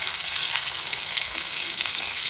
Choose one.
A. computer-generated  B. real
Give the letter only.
A